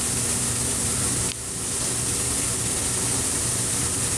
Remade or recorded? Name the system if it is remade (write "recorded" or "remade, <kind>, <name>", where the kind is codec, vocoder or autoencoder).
recorded